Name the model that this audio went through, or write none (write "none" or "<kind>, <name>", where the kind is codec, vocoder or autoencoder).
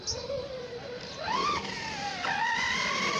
none